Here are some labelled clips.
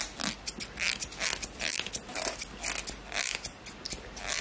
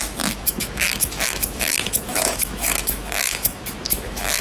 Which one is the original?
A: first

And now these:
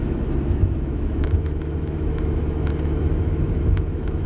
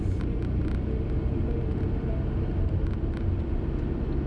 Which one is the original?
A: second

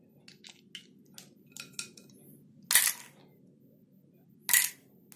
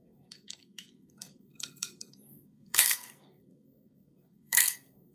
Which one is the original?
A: first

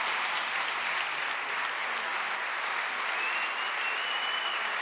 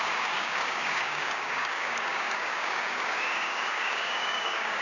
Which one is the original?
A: first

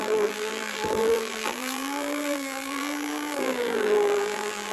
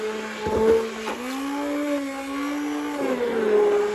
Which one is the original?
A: second